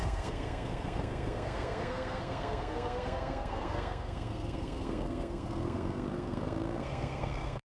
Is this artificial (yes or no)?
yes